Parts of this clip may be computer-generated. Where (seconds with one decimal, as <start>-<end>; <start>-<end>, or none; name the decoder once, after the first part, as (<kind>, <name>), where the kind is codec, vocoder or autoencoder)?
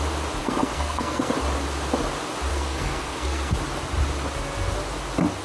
0.4-1.3 (codec, SNAC); 2.5-3.5